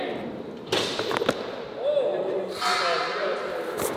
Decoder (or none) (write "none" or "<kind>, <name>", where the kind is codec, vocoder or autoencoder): none